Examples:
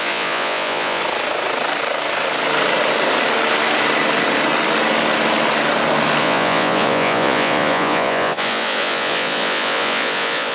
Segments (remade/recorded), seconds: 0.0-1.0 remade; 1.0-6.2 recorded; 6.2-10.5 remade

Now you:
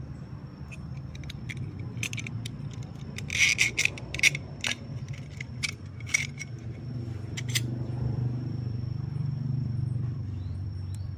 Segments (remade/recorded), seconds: 0.0-0.9 remade; 0.9-4.1 recorded; 4.1-11.2 remade